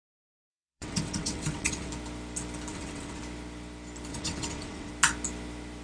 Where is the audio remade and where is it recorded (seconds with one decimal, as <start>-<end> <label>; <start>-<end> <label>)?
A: 0.0-0.5 recorded; 0.5-1.9 remade; 1.9-2.7 recorded; 2.7-3.2 remade; 3.2-4.1 recorded; 4.1-4.9 remade; 4.9-5.8 recorded